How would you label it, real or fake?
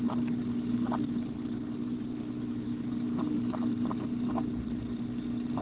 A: real